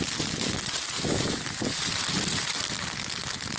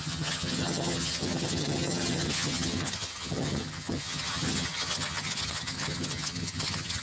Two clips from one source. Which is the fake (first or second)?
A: second